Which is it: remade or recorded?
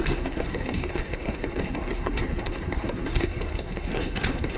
remade